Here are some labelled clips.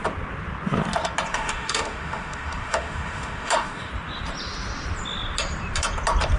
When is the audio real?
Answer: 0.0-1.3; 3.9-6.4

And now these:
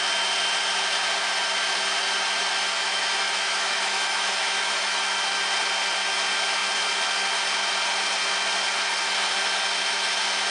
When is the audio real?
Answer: 0.0-2.7; 5.0-10.5

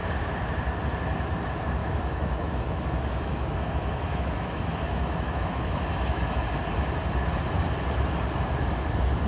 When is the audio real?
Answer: 0.0-1.8; 6.4-9.3

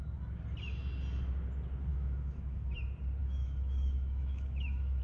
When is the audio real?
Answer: 0.0-1.9; 2.8-3.2

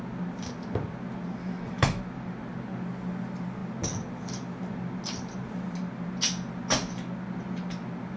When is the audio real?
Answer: 0.0-1.4; 2.0-8.2